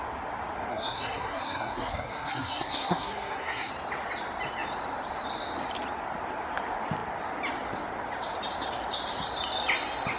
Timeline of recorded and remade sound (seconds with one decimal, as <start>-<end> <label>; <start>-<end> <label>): 0.0-0.7 recorded; 0.7-3.7 remade; 3.7-10.2 recorded